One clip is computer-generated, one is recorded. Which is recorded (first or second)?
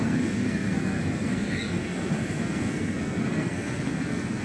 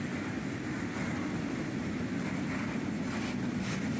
second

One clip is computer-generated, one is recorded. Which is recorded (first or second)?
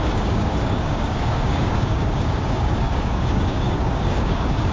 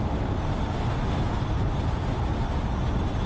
second